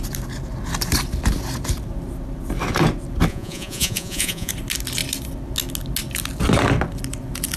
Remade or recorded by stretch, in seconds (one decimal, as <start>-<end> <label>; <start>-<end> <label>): 0.0-3.3 recorded; 3.3-4.5 remade; 4.5-7.6 recorded